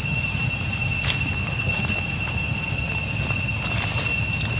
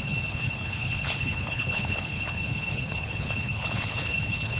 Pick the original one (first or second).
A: first